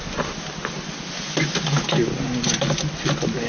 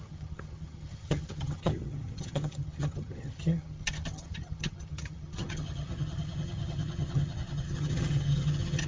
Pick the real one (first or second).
first